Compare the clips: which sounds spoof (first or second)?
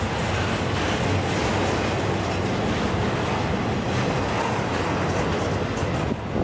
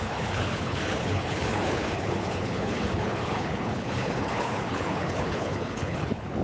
second